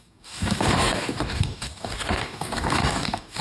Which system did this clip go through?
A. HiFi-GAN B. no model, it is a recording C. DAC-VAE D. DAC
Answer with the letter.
D